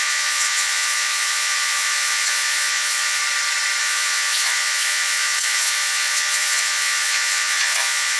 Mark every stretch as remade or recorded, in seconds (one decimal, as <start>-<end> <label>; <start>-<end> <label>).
0.0-3.2 remade; 3.2-3.8 recorded; 3.8-8.2 remade